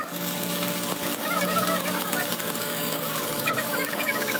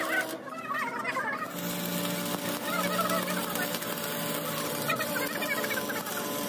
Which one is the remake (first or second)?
first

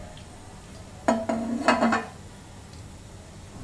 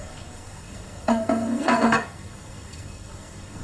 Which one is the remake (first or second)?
second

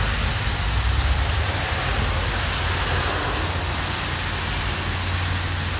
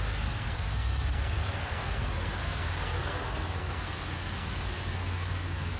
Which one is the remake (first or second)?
second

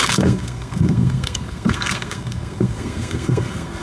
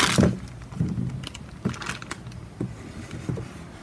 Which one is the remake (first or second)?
first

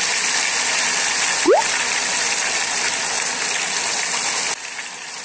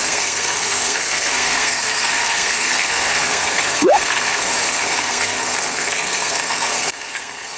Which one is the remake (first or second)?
second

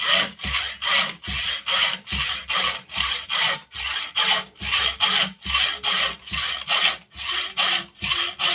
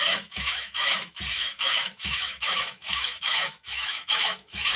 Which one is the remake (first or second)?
second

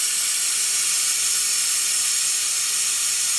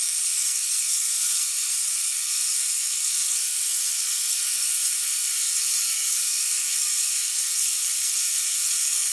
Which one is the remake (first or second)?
second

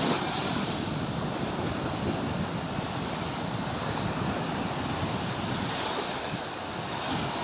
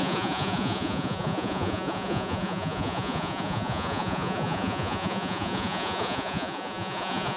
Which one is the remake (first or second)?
second